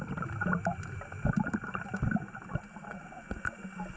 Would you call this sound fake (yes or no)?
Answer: no